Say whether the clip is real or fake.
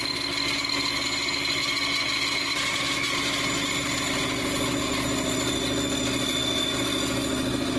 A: real